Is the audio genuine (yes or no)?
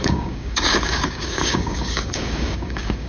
no